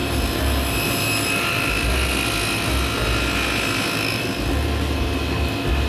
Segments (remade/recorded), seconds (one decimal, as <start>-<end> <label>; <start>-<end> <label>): 0.0-5.9 recorded